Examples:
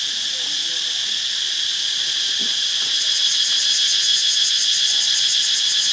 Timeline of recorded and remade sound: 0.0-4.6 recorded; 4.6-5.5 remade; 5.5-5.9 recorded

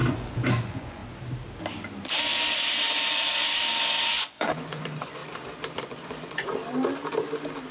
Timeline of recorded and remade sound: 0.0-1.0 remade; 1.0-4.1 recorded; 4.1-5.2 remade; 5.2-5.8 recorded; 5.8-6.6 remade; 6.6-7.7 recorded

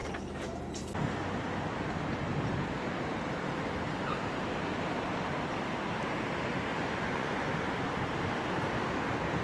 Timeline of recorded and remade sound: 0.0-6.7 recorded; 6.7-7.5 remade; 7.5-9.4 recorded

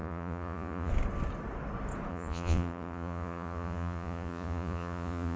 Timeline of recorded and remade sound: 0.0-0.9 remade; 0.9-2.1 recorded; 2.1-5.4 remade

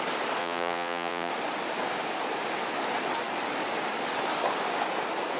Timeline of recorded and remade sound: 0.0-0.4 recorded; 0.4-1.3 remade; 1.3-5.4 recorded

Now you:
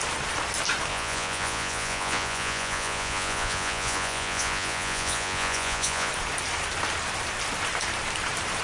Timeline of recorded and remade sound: 0.0-0.9 recorded; 0.9-6.1 remade; 6.1-8.6 recorded

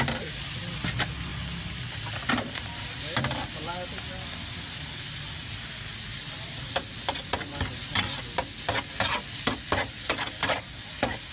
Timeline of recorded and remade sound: 0.0-11.3 recorded

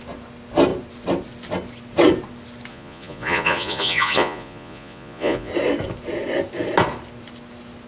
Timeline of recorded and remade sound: 0.0-2.7 recorded; 2.7-5.5 remade; 5.5-7.9 recorded